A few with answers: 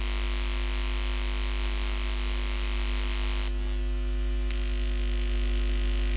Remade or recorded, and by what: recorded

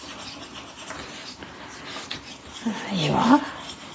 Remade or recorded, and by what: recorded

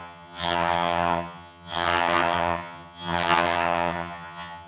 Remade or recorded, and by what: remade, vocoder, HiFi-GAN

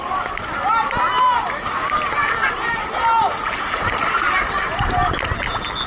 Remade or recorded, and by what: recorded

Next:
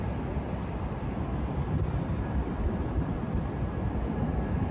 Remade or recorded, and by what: recorded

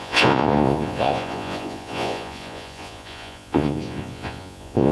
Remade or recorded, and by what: remade, vocoder, Vocos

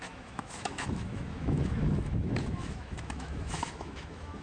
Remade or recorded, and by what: remade, autoencoder, DAC-VAE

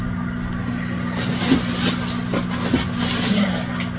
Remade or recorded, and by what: recorded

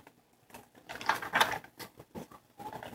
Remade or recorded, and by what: recorded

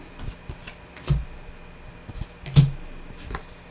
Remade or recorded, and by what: recorded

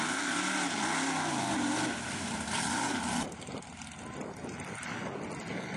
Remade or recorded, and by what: recorded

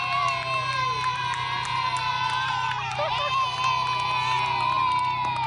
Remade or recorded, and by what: recorded